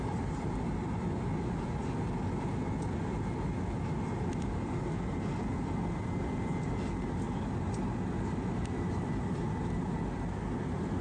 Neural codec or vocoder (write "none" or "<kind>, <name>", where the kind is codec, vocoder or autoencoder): none